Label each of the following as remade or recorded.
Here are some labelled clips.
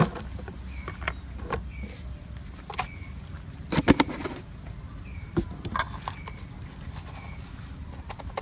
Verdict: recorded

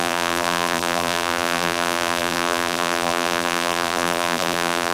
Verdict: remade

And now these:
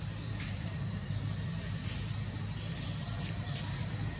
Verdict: remade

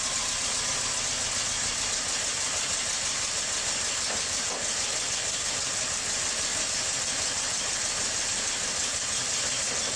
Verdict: remade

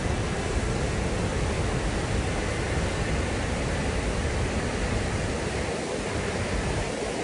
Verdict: recorded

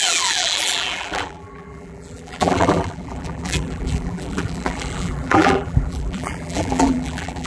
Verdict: remade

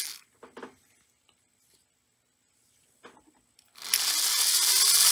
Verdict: recorded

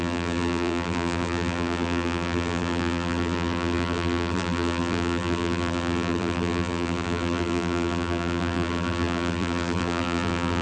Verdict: remade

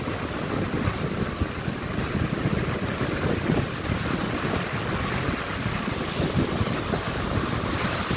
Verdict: recorded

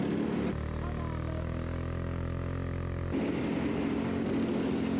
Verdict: recorded